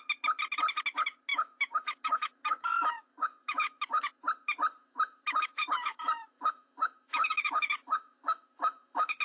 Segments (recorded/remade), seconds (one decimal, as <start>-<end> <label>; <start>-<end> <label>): 0.0-1.3 recorded; 1.3-4.1 remade; 4.1-4.8 recorded; 4.8-9.2 remade